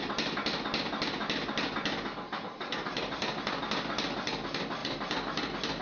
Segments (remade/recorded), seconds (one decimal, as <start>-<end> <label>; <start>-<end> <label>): 0.0-2.5 recorded; 2.5-3.6 remade; 3.6-4.8 recorded; 4.8-5.8 remade